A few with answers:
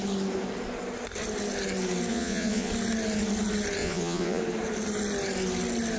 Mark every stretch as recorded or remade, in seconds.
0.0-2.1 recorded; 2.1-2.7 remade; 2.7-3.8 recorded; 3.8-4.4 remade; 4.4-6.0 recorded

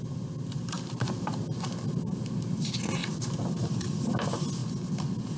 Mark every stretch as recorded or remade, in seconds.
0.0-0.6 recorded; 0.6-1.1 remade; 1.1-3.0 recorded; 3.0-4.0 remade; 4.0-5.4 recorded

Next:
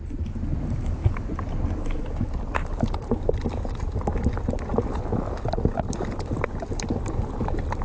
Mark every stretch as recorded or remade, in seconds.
0.0-7.8 recorded

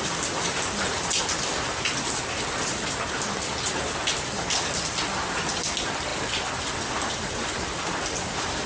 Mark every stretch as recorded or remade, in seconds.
0.0-8.7 recorded

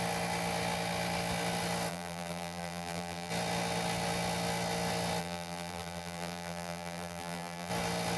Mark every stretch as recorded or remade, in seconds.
0.0-1.9 recorded; 1.9-3.3 remade; 3.3-5.2 recorded; 5.2-7.7 remade; 7.7-8.2 recorded

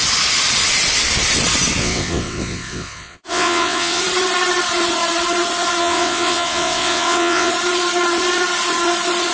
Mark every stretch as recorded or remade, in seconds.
0.0-1.8 recorded; 1.8-4.0 remade; 4.0-5.8 recorded; 5.8-7.5 remade; 7.5-9.3 recorded